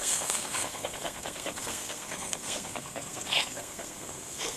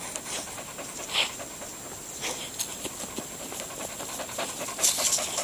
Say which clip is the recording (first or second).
second